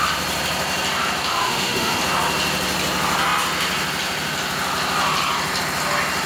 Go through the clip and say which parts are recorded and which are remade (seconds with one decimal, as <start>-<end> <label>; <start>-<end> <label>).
0.0-1.3 recorded; 1.3-2.0 remade; 2.0-6.3 recorded